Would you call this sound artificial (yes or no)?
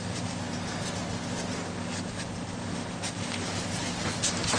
no